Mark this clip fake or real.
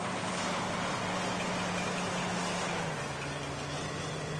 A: real